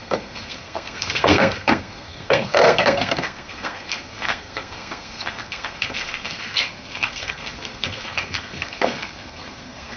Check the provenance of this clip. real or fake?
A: fake